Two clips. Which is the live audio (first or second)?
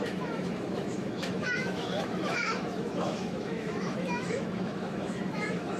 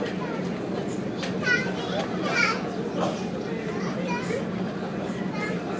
second